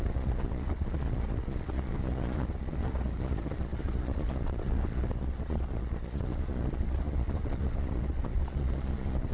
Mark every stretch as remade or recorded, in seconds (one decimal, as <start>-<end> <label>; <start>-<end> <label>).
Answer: 0.0-9.3 remade